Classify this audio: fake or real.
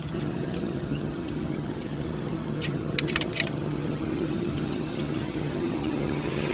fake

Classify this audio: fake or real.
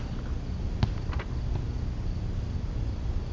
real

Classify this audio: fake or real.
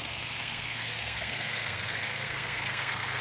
fake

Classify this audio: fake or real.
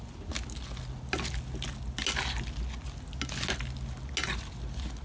real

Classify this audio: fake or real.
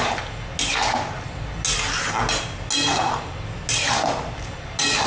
real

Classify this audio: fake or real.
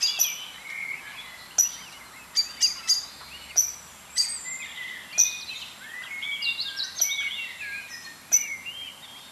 real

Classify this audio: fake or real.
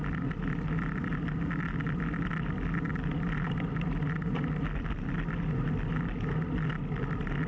real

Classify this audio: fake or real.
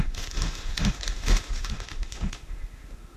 fake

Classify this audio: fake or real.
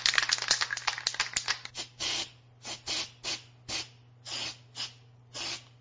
real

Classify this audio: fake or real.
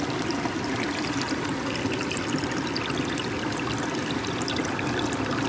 real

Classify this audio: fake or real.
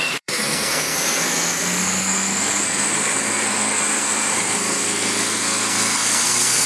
fake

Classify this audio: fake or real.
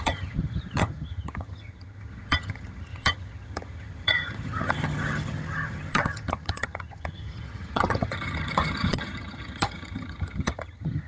fake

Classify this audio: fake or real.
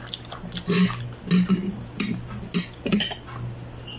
real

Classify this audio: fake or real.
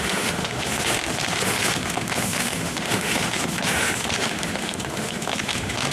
fake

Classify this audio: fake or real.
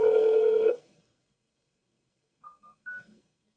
fake